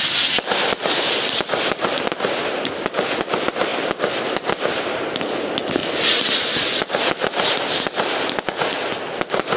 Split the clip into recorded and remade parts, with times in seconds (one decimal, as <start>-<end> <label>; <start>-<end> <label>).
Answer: 0.0-9.6 recorded